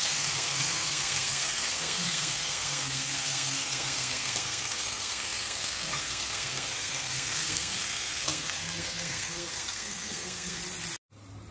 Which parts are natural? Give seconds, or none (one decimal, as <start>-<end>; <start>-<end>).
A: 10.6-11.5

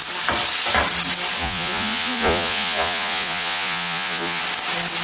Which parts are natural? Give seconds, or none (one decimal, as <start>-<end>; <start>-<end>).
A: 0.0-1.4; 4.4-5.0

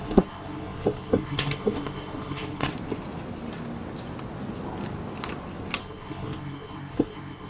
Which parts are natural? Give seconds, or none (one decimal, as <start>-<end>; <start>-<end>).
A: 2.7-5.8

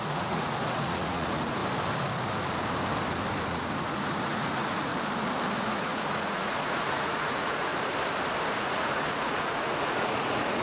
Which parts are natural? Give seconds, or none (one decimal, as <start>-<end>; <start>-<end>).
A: 1.6-3.5; 4.9-5.6; 7.7-8.6

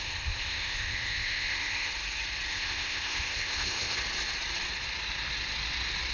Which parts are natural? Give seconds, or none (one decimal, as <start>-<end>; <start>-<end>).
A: 1.9-2.5; 4.0-6.1

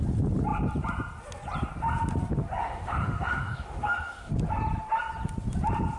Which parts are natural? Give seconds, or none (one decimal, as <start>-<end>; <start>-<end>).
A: 0.0-2.6; 4.3-6.0